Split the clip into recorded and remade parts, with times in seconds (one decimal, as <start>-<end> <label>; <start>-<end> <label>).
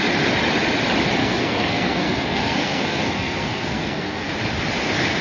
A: 0.0-1.2 recorded; 1.2-4.3 remade; 4.3-5.2 recorded